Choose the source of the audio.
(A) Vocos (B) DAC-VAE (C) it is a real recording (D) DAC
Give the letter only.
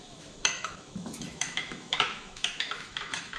B